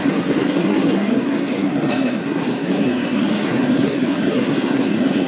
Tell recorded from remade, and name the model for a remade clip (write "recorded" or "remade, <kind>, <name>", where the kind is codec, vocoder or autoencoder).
remade, codec, SNAC